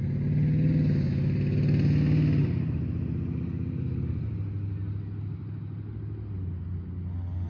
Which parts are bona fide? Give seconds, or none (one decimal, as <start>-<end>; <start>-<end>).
0.0-7.5